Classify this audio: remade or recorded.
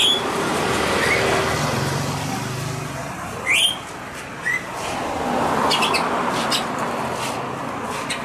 recorded